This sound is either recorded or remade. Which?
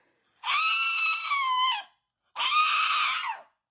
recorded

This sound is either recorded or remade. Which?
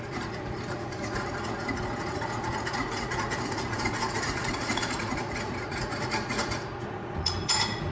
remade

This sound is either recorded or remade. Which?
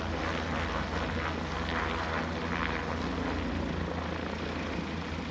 recorded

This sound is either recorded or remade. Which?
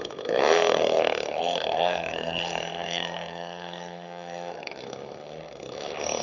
remade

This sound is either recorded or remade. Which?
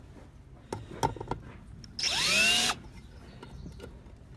recorded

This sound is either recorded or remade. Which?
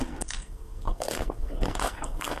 remade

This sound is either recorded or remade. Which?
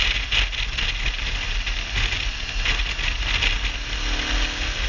recorded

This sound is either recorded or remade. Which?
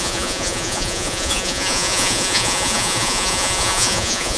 remade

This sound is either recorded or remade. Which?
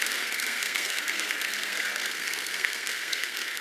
remade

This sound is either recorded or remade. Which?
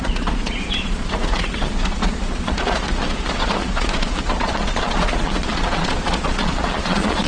remade